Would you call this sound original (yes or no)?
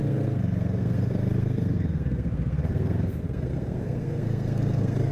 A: no